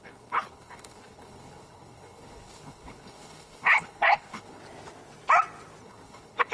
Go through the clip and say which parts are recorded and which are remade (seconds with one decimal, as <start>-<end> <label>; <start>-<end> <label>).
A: 0.0-4.6 remade; 4.6-5.8 recorded; 5.8-6.5 remade